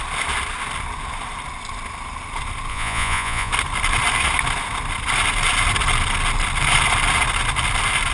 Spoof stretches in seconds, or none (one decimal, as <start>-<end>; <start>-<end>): 2.7-3.5